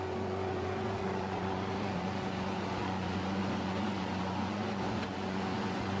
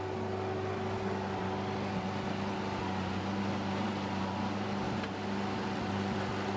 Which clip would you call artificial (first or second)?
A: first